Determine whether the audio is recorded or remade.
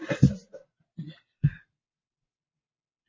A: recorded